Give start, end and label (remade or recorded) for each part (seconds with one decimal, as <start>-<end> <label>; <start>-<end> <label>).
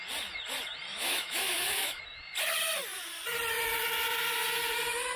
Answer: 0.0-0.9 recorded; 0.9-2.0 remade; 2.0-5.2 recorded